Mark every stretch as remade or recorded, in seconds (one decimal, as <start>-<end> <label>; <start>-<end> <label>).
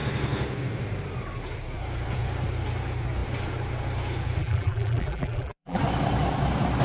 0.0-4.4 recorded; 4.4-5.8 remade; 5.8-6.8 recorded